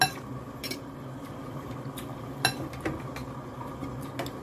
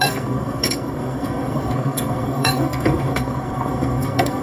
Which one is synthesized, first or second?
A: second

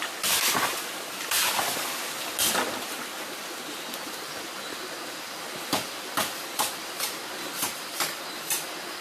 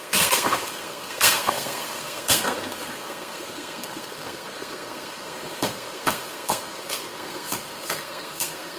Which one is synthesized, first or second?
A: second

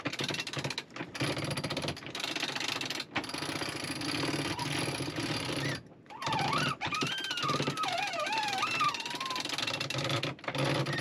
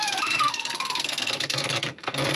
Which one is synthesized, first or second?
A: second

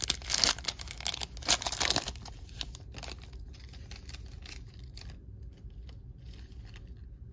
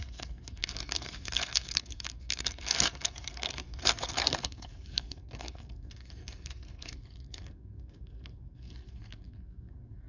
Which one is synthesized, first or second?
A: second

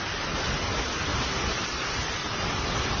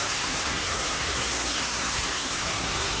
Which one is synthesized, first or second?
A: second